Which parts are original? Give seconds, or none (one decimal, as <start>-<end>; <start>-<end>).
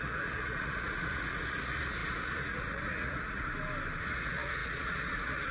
3.5-4.0